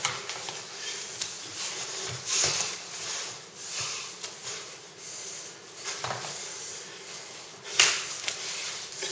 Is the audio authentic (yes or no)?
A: yes